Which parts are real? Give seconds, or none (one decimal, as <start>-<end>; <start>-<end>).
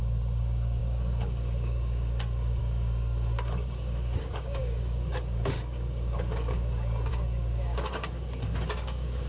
none